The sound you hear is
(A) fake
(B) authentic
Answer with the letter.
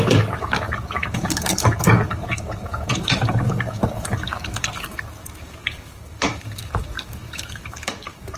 A